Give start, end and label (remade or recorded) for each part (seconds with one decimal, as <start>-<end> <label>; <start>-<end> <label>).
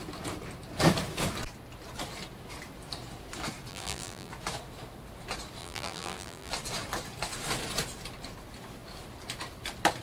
0.0-3.7 recorded; 3.7-4.3 remade; 4.3-5.6 recorded; 5.6-6.5 remade; 6.5-10.0 recorded